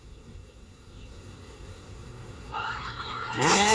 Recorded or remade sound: remade